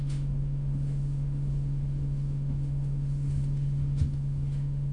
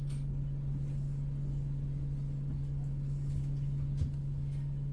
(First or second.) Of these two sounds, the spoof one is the first